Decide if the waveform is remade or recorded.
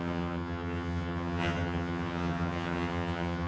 remade